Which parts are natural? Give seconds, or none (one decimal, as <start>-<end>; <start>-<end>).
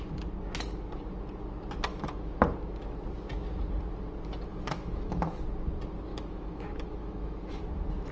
0.0-1.9; 2.4-4.5; 5.4-6.1; 7.6-8.1